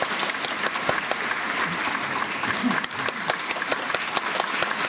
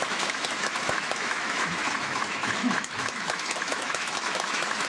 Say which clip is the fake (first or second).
second